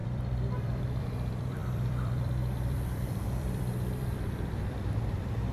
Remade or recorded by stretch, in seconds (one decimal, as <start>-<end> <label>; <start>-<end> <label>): 0.0-5.5 remade